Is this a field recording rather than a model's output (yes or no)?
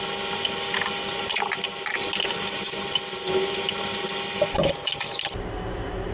yes